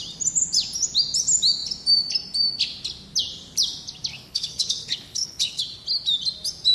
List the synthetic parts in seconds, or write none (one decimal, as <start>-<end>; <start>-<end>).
4.1-5.6

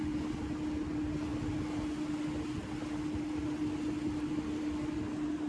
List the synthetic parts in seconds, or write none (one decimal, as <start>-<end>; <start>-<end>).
none